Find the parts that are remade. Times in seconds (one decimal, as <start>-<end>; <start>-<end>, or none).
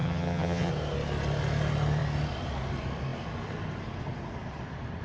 0.0-0.7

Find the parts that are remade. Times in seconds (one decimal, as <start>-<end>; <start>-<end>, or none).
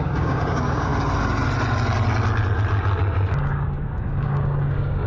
0.0-0.9; 3.3-5.1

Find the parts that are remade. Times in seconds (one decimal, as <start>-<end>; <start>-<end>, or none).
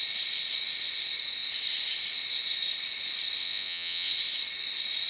3.4-4.1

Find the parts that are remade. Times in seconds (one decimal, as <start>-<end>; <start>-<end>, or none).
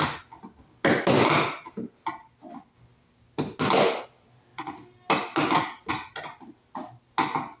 none